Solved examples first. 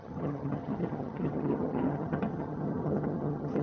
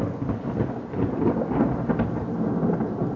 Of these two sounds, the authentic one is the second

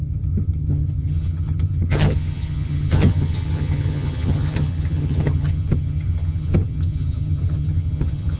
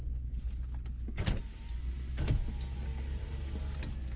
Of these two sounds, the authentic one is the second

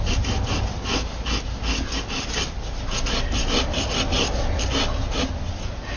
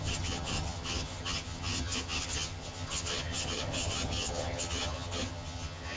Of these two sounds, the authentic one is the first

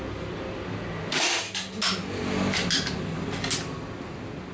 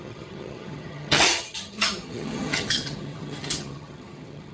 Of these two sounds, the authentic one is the first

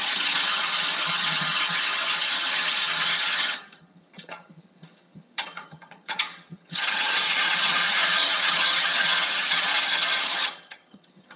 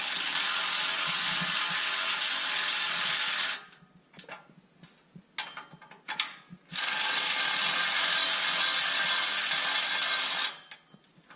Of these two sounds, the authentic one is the second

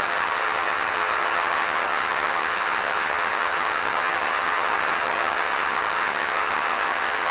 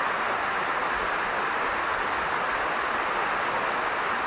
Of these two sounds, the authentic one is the second